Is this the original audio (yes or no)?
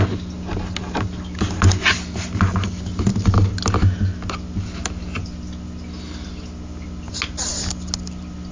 yes